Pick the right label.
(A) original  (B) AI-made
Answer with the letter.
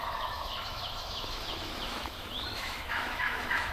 B